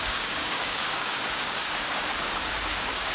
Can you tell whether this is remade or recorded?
remade